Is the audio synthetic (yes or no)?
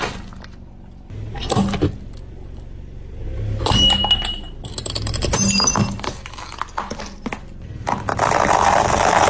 no